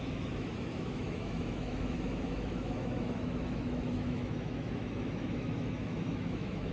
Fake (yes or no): yes